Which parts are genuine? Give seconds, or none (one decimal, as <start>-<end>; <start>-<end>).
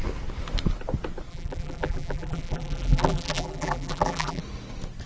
0.0-1.3; 4.4-5.1